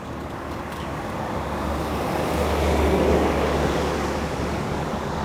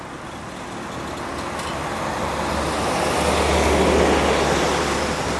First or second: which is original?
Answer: second